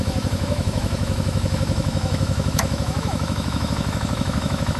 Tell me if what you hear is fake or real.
fake